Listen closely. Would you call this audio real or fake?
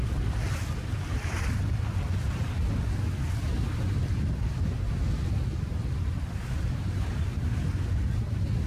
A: real